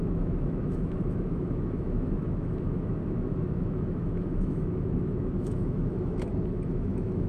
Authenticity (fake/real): fake